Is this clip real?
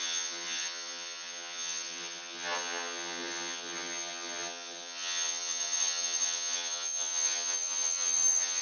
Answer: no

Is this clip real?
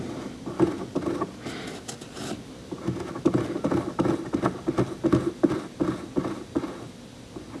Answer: yes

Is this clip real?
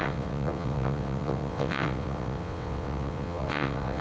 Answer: no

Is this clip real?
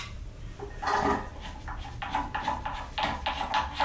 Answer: yes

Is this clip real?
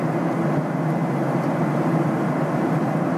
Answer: yes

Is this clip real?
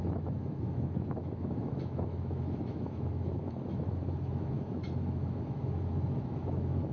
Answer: no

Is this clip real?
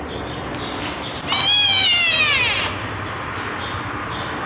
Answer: yes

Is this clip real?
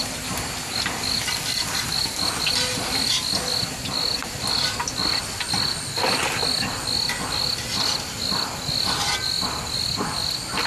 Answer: yes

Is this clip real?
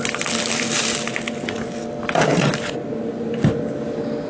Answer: yes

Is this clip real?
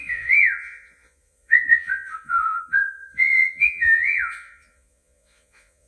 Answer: no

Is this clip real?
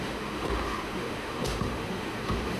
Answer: no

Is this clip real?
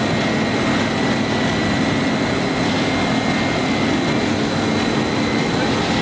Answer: yes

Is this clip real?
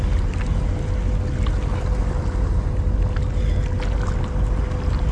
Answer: yes